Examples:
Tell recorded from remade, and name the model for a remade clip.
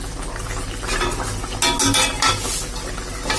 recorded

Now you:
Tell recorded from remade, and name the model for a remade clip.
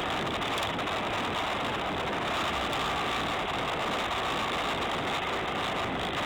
recorded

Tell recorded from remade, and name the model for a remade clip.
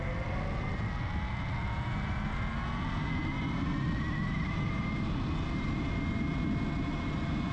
recorded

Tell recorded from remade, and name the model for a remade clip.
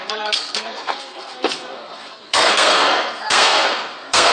remade, codec, SNAC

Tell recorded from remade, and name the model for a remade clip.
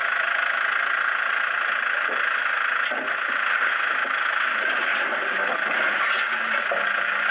recorded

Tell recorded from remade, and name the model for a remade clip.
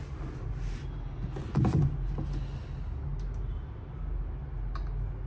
recorded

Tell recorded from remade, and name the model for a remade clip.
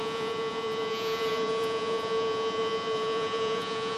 remade, vocoder, Vocos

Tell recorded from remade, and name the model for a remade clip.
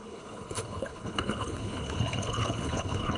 remade, codec, HILCodec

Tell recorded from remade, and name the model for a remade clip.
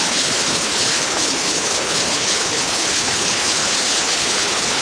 remade, codec, HILCodec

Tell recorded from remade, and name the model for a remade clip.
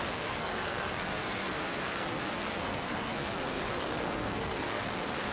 remade, codec, SNAC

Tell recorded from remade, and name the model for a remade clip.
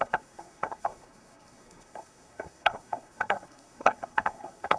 remade, codec, SNAC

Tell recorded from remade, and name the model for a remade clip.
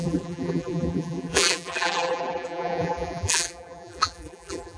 remade, vocoder, BigVGAN v2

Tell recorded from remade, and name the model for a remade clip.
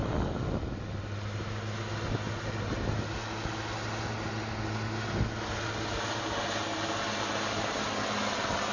recorded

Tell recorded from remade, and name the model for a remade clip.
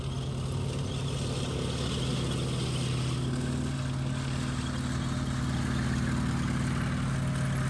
recorded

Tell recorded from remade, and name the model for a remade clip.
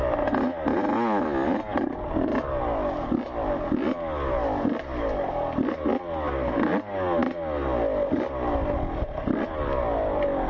recorded